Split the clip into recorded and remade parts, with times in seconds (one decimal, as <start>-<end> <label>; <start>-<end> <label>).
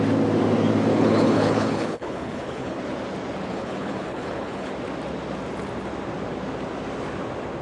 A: 0.0-0.9 recorded; 0.9-2.8 remade; 2.8-3.5 recorded; 3.5-4.7 remade; 4.7-7.6 recorded